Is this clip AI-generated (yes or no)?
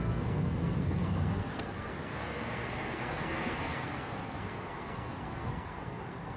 yes